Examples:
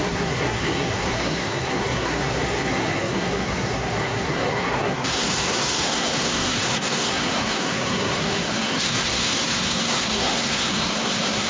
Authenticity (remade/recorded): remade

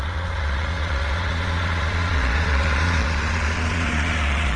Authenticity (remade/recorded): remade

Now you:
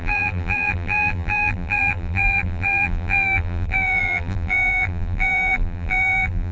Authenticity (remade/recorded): remade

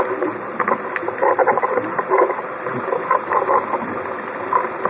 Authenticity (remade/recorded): recorded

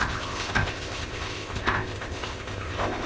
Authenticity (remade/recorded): remade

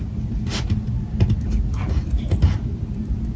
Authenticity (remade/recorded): recorded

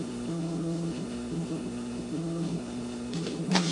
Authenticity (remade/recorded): remade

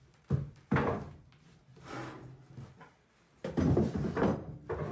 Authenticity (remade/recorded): recorded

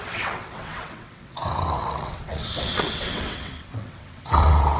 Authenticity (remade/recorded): remade